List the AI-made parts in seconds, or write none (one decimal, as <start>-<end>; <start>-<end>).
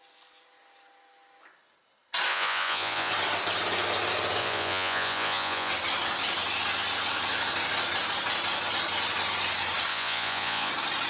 2.3-3.1; 4.4-5.7; 9.9-10.7